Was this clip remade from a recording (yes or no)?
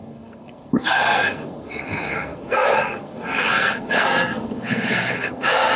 yes